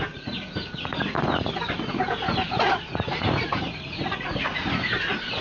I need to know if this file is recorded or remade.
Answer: remade